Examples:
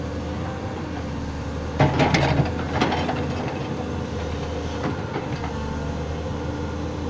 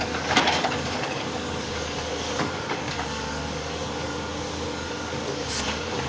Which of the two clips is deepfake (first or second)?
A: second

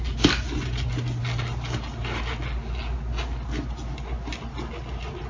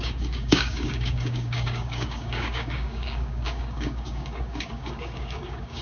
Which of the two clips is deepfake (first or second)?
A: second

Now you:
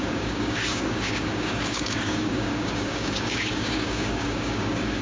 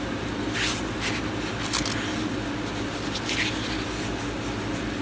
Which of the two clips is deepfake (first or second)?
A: first